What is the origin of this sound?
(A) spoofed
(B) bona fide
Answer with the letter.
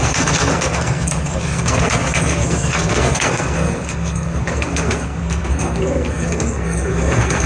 A